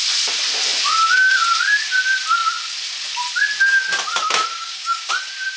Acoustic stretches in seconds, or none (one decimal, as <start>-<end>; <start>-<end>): 0.0-4.5; 5.1-5.6